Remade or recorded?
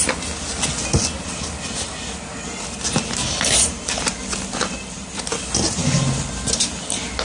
recorded